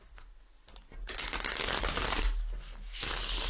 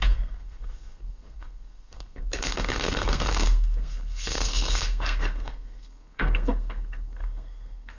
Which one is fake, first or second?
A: second